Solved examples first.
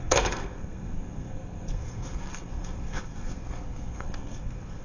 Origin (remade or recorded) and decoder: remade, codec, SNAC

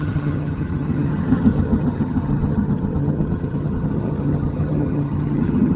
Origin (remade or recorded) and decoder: remade, vocoder, HiFi-GAN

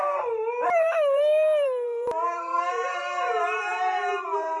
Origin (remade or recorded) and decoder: remade, vocoder, BigVGAN v2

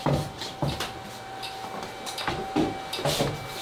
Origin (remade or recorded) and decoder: recorded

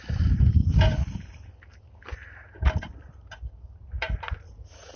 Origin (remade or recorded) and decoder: recorded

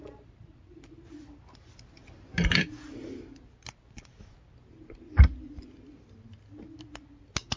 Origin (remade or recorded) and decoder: recorded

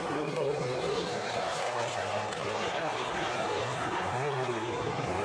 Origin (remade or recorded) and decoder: remade, codec, SNAC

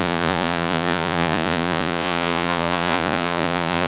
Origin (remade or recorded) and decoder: remade, vocoder, Vocos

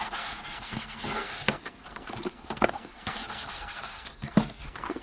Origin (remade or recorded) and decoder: remade, codec, SNAC